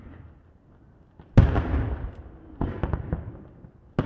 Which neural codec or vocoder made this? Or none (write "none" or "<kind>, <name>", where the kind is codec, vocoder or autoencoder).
none